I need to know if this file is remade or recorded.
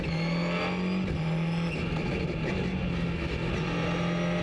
recorded